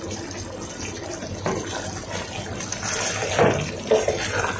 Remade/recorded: remade